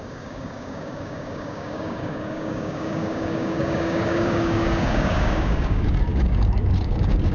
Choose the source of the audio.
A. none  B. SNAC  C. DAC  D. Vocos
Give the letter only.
C